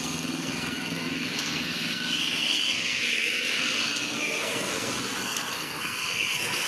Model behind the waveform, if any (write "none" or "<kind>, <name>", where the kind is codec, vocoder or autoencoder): codec, SNAC